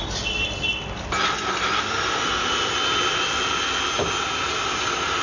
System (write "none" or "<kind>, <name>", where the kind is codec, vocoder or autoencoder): none